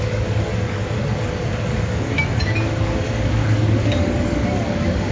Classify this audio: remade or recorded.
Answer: remade